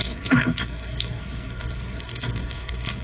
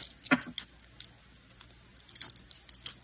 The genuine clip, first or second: second